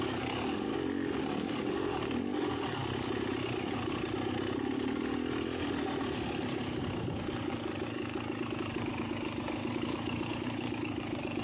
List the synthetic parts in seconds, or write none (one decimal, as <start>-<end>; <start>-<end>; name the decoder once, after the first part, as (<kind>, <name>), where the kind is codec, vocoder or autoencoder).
0.0-0.7 (codec, DAC); 1.2-2.8; 7.4-11.4